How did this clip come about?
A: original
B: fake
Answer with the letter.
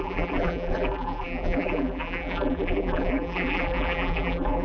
B